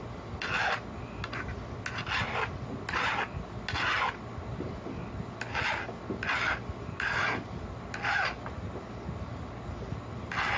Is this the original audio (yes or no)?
yes